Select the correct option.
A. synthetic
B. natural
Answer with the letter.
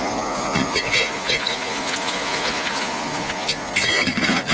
A